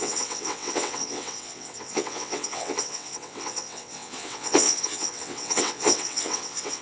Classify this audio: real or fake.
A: fake